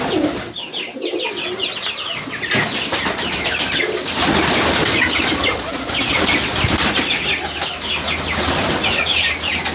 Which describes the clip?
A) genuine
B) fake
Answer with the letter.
A